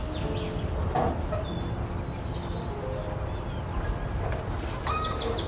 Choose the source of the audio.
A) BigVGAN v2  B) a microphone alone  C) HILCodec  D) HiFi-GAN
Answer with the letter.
B